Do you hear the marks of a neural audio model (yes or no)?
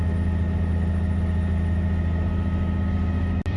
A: no